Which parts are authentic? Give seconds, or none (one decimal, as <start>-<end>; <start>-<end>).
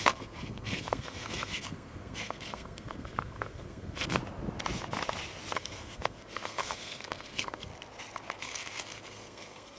4.2-5.5; 7.7-8.4